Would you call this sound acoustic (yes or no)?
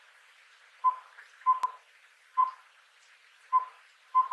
no